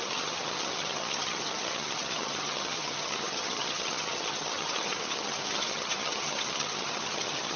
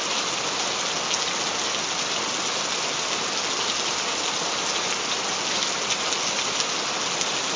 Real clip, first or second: second